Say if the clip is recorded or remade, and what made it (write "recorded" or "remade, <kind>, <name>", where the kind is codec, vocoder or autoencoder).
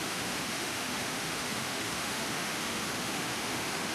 remade, autoencoder, DAC-VAE